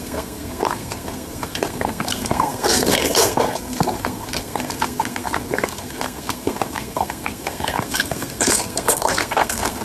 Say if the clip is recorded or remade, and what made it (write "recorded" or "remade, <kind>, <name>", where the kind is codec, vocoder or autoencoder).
remade, codec, SNAC